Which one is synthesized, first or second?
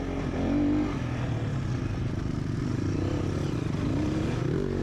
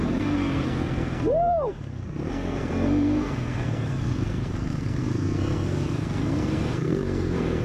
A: second